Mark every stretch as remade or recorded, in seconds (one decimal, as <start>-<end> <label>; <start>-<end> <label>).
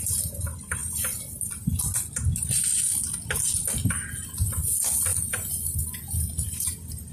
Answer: 0.0-0.8 recorded; 0.8-3.0 remade; 3.0-5.1 recorded; 5.1-5.8 remade; 5.8-7.1 recorded